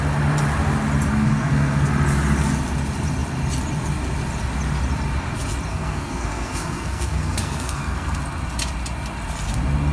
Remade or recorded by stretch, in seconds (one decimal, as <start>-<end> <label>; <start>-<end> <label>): 0.0-1.1 recorded; 1.1-1.9 remade; 1.9-5.7 recorded; 5.7-8.2 remade; 8.2-9.9 recorded